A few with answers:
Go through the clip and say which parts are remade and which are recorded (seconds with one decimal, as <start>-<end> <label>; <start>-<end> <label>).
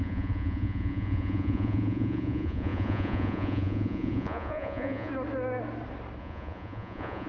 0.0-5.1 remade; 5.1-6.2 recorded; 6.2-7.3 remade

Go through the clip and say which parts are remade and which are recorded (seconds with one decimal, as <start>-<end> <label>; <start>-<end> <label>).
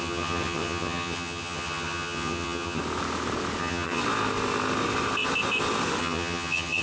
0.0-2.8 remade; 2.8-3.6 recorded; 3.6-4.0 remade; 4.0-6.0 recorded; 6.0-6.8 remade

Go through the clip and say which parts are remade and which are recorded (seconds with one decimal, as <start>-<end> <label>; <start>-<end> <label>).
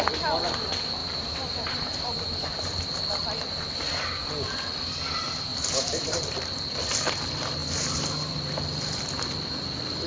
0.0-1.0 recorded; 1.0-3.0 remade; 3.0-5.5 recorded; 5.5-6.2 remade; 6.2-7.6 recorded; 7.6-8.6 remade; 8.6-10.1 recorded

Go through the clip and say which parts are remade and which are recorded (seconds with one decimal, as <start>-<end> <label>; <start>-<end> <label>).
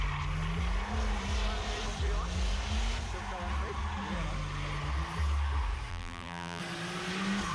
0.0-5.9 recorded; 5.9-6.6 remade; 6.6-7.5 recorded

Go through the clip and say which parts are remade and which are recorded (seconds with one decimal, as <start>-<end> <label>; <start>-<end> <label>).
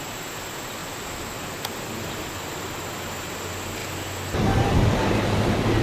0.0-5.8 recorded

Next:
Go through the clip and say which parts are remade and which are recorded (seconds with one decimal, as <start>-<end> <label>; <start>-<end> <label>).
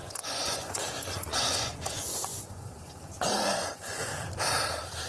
0.0-4.1 remade; 4.1-5.1 recorded